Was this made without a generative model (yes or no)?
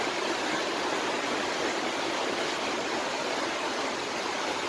yes